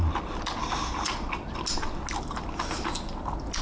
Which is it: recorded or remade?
recorded